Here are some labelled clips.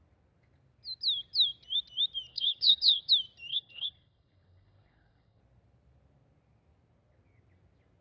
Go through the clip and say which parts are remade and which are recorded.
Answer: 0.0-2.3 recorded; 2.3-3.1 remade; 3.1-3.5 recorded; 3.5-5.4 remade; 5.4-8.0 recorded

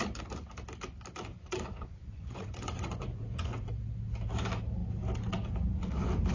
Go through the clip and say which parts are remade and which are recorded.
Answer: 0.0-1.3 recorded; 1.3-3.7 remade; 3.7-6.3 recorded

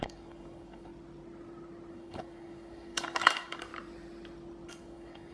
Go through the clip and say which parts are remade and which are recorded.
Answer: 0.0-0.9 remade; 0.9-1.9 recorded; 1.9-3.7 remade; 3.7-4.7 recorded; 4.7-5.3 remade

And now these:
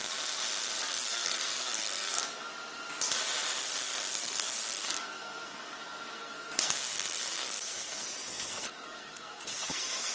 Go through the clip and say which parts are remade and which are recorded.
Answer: 0.0-1.0 recorded; 1.0-2.5 remade; 2.5-4.1 recorded; 4.1-10.1 remade

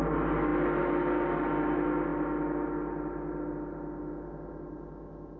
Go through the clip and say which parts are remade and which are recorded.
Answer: 0.0-5.4 recorded